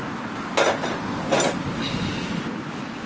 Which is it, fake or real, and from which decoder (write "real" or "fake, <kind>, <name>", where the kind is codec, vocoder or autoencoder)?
real